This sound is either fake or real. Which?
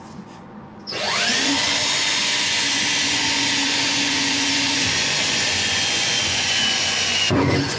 fake